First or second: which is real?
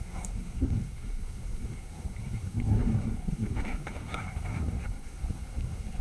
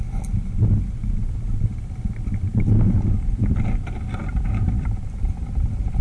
second